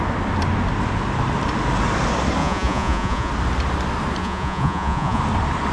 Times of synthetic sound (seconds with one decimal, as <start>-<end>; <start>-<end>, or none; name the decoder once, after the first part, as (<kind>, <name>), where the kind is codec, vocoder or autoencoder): 2.4-3.3 (vocoder, Vocos); 4.2-5.2